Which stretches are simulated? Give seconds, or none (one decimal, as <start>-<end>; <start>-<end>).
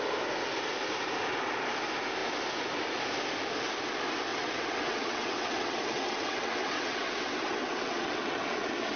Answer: 4.3-9.0